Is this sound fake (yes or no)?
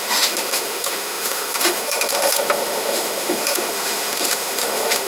yes